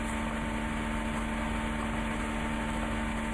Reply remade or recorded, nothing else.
recorded